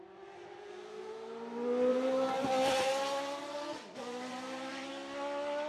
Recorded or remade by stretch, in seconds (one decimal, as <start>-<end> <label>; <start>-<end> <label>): 0.0-1.9 recorded; 1.9-2.9 remade; 2.9-4.3 recorded; 4.3-4.9 remade; 4.9-5.7 recorded